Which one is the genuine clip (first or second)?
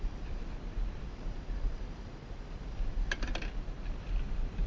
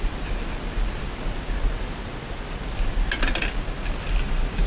second